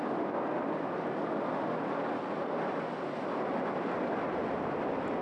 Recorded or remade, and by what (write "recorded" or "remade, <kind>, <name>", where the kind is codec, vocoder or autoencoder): recorded